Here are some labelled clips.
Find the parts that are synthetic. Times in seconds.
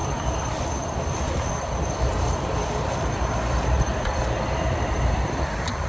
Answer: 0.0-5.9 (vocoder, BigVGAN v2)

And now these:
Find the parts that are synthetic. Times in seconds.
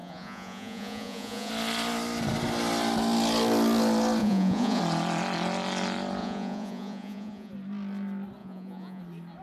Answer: 0.0-1.5 (vocoder, Vocos); 4.2-4.8; 6.2-7.5; 8.4-9.0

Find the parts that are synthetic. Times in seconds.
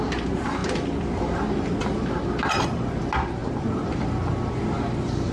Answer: 3.4-4.0 (vocoder, BigVGAN v2)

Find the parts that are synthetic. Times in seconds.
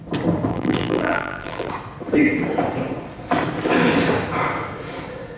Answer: 0.5-1.7 (vocoder, BigVGAN v2)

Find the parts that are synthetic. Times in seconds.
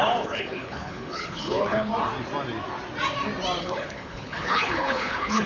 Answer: 0.0-1.9 (codec, HILCodec); 3.6-5.5